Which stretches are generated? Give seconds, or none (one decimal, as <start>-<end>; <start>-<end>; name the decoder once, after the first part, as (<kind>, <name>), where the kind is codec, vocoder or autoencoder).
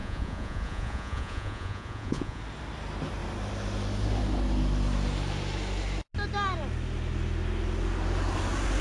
0.0-2.4 (vocoder, Vocos)